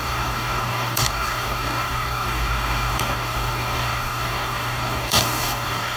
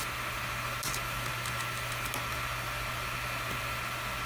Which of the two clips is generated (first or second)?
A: first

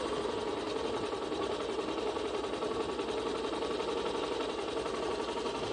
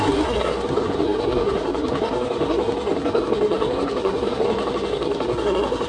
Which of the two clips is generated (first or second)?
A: second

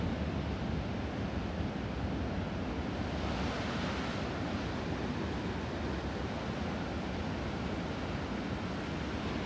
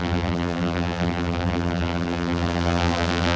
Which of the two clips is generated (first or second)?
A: second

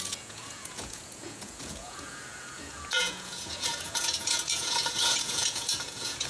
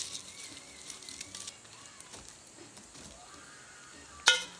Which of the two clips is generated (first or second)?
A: first